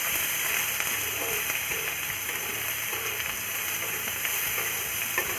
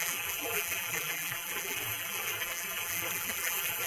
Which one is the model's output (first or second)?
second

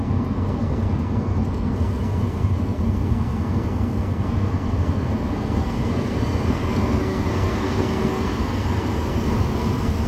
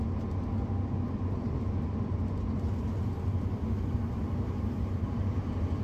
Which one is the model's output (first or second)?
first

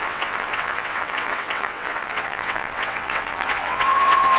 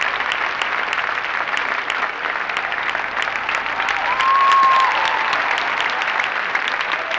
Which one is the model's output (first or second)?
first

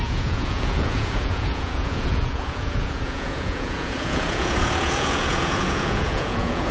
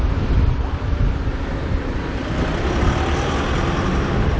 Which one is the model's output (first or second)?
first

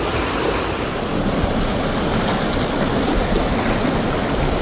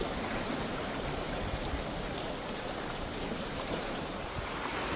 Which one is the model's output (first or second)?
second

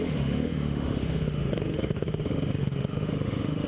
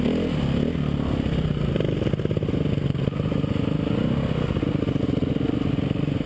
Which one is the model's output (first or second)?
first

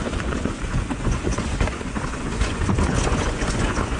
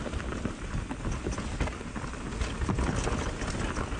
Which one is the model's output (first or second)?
first